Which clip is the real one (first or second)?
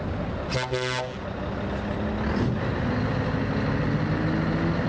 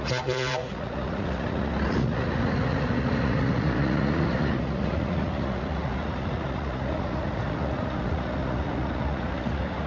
first